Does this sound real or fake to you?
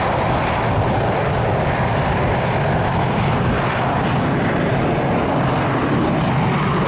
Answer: real